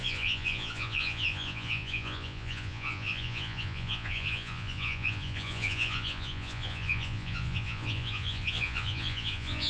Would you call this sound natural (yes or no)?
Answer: no